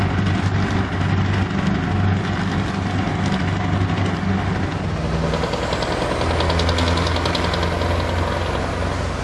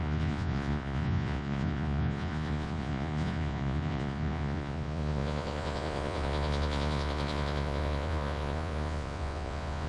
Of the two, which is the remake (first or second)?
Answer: second